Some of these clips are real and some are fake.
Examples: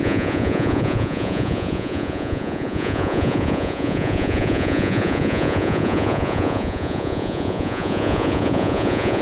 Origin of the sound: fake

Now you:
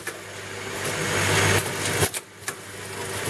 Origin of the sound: real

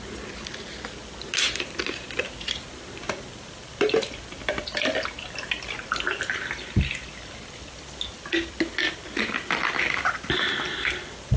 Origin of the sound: real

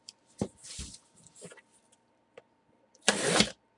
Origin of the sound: fake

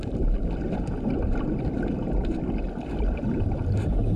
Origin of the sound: real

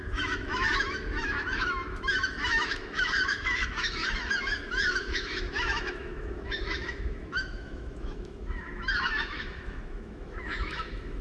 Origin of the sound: fake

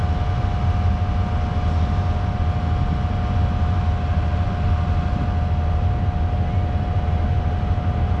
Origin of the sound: real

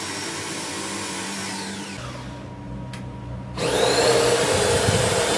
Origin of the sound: real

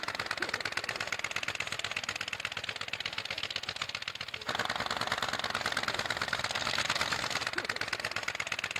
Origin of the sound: real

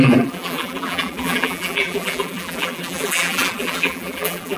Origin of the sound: fake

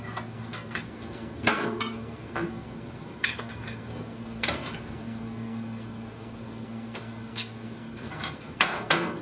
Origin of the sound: fake